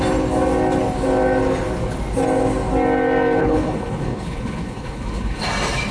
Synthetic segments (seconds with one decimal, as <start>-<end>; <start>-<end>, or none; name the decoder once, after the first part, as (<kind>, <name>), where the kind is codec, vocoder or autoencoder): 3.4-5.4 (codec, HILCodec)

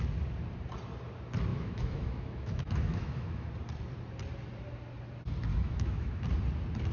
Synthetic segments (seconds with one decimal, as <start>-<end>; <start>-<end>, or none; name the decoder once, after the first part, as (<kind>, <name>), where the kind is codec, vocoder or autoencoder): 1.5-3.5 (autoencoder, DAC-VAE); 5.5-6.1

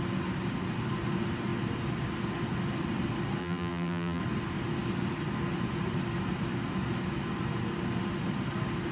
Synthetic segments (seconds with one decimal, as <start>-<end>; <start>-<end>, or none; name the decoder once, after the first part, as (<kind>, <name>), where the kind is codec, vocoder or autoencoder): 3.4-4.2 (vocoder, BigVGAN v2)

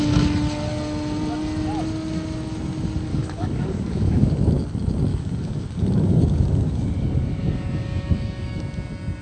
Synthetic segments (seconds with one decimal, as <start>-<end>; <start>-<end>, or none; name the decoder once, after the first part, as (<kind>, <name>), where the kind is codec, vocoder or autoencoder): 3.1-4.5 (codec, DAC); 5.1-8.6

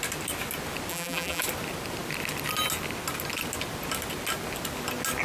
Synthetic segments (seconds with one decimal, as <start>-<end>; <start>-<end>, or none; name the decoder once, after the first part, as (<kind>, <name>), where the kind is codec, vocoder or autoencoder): 0.9-1.4 (vocoder, BigVGAN v2)